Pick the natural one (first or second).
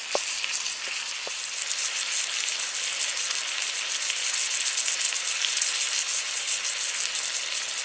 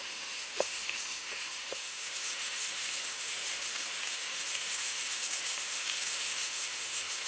first